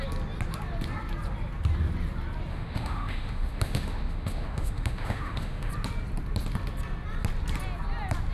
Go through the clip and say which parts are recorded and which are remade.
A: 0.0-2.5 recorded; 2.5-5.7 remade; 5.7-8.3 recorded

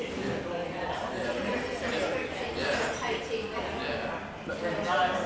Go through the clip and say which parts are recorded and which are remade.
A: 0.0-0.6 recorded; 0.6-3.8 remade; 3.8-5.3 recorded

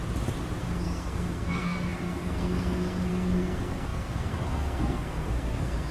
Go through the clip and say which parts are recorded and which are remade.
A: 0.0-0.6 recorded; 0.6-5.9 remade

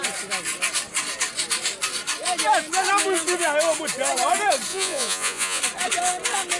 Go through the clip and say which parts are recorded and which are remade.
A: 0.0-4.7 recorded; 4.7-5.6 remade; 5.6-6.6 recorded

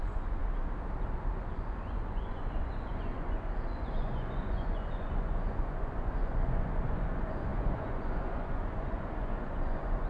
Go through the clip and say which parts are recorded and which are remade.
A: 0.0-0.4 remade; 0.4-1.1 recorded; 1.1-10.1 remade